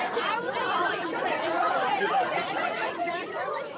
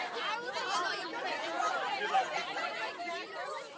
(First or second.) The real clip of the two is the second